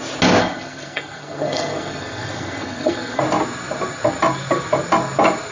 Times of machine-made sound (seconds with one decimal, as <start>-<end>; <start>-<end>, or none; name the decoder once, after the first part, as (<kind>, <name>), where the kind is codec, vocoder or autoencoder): 0.4-3.2 (codec, SNAC)